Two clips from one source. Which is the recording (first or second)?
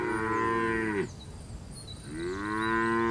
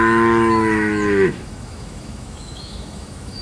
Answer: first